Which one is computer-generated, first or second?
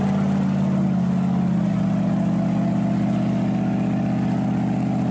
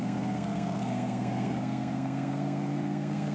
second